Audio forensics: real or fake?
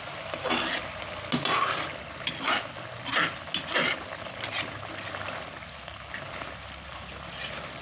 real